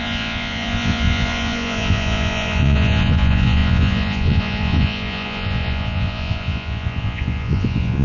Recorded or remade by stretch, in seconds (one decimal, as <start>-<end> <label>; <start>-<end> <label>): 0.0-8.0 remade